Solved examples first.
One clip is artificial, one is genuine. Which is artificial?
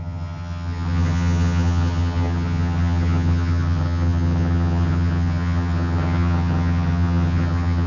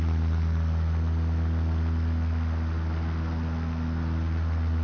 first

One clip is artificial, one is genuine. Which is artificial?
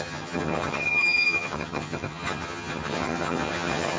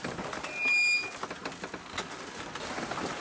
first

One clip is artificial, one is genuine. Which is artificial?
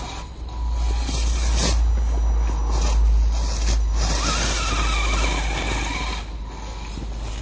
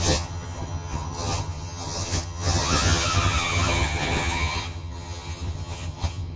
second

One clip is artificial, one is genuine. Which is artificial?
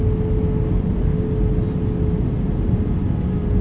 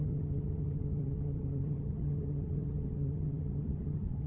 second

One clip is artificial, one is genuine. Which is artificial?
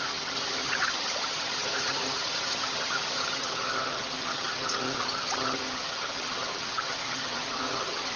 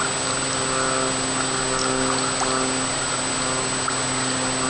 first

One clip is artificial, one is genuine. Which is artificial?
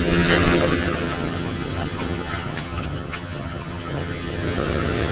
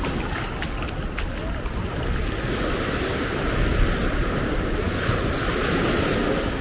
first